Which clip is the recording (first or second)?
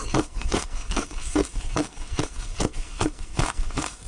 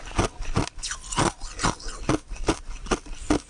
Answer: second